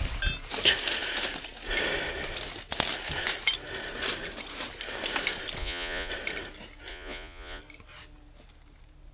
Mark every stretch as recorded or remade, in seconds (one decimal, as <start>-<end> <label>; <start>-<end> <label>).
0.0-5.6 recorded; 5.6-6.1 remade; 6.1-6.9 recorded; 6.9-7.6 remade; 7.6-9.1 recorded

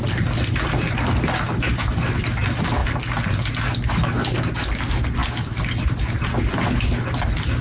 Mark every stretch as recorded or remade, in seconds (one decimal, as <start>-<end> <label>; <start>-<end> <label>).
0.0-7.6 recorded

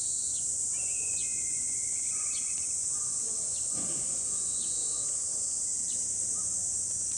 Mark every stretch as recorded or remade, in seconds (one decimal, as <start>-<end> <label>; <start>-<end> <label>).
0.0-5.7 remade; 5.7-6.4 recorded; 6.4-7.2 remade

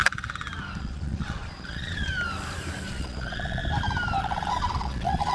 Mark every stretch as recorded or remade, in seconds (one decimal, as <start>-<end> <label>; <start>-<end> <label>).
0.0-0.8 recorded; 0.8-2.1 remade; 2.1-2.9 recorded; 2.9-3.6 remade; 3.6-4.2 recorded; 4.2-5.3 remade

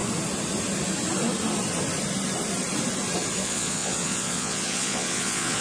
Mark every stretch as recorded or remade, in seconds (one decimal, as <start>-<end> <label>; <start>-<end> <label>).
0.0-3.4 recorded; 3.4-5.6 remade